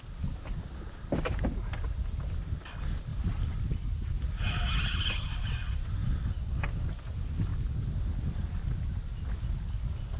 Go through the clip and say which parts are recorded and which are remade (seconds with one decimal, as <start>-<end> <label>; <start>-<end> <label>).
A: 0.0-10.2 recorded